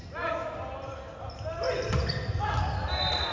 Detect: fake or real real